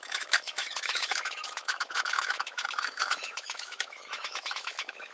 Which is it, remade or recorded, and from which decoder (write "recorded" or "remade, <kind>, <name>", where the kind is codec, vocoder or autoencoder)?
remade, autoencoder, DAC-VAE